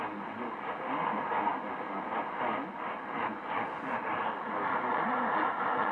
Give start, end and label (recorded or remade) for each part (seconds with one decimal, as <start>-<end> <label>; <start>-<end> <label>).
0.0-3.3 recorded; 3.3-3.8 remade; 3.8-4.9 recorded; 4.9-5.9 remade

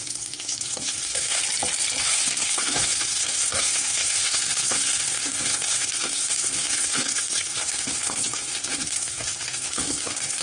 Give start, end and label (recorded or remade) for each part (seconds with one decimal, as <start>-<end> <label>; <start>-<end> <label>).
0.0-1.4 remade; 1.4-2.0 recorded; 2.0-10.4 remade

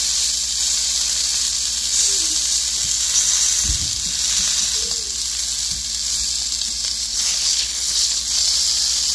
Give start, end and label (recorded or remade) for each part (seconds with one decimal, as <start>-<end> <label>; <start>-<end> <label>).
0.0-7.1 recorded; 7.1-8.2 remade; 8.2-9.1 recorded